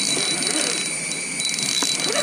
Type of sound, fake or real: real